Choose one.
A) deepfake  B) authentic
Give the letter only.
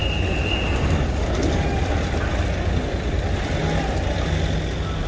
B